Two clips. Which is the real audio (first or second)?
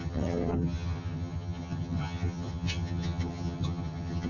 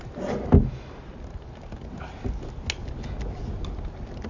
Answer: second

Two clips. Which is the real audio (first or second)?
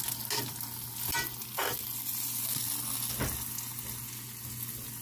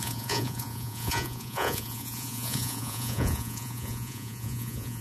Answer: first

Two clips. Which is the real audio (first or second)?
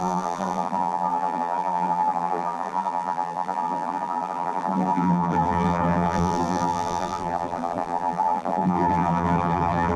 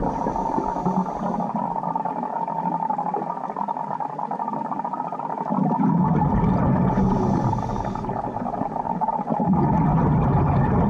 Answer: second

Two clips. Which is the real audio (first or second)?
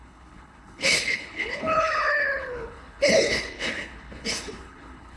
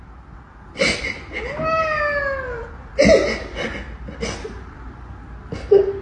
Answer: second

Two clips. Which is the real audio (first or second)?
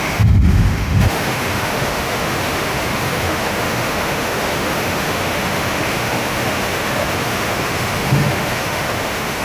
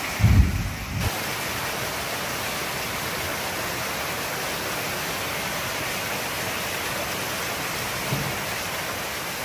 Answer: second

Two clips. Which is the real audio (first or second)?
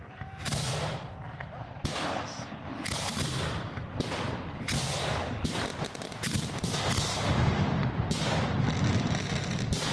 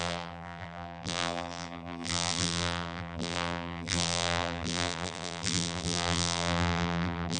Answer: first